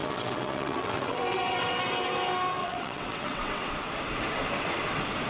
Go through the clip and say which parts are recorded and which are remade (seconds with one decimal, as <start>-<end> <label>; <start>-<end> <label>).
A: 0.0-1.8 remade; 1.8-2.6 recorded; 2.6-3.7 remade; 3.7-5.3 recorded